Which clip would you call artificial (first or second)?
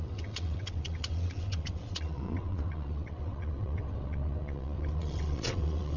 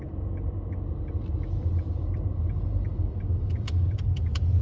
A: first